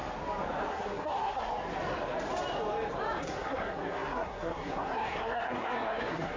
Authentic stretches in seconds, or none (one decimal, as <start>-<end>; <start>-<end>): 0.0-0.7; 1.5-3.2

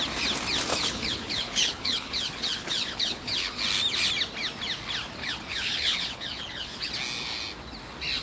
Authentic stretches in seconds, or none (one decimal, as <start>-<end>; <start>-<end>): 0.0-0.7; 3.6-5.2; 6.9-8.2

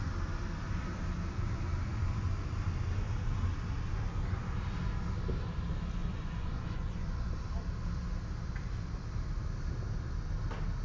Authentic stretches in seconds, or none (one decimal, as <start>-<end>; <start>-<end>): 0.0-6.0; 7.3-10.8

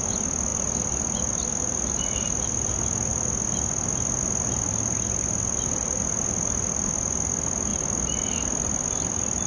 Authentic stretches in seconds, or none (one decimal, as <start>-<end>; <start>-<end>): 0.0-9.5